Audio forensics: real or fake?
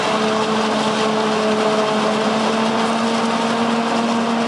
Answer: real